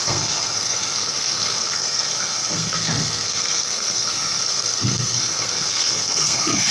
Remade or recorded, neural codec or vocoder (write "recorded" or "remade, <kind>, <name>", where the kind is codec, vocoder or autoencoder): remade, codec, SNAC